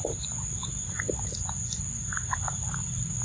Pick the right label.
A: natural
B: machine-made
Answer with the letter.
A